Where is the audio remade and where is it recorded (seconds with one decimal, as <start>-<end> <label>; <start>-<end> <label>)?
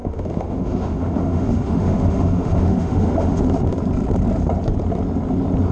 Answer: 0.0-3.4 remade; 3.4-5.7 recorded